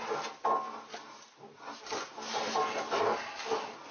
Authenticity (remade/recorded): recorded